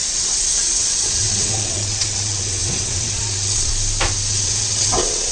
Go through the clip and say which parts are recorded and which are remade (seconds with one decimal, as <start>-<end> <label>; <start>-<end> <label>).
0.0-3.7 remade; 3.7-4.3 recorded; 4.3-5.3 remade